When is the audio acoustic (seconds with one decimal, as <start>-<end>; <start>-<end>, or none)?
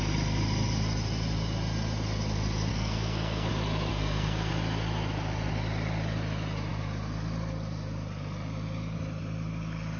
0.0-2.7; 3.5-3.9; 4.5-10.0